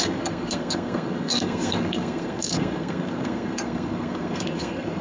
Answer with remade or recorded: remade